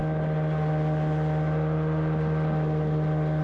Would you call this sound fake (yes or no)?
no